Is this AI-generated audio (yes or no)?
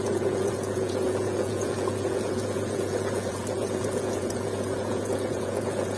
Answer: yes